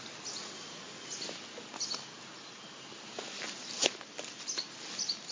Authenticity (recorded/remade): recorded